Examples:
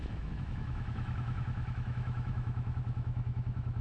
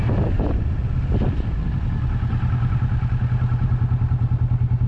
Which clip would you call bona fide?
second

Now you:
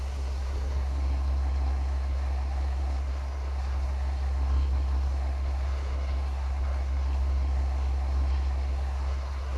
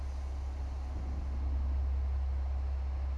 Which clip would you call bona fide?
second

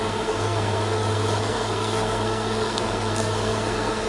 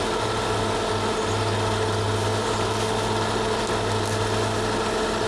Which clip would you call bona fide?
second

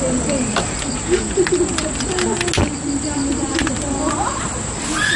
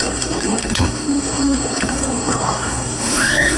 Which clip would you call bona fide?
first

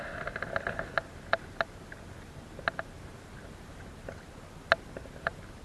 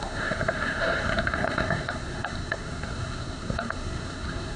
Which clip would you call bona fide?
first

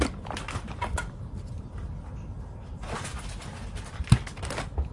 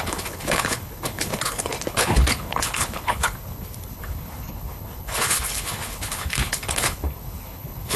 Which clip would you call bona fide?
first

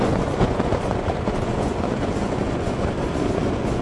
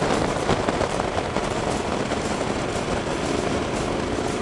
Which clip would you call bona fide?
second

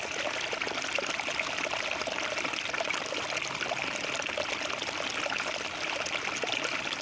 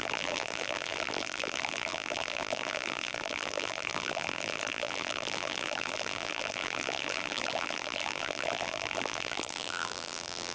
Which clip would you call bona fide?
first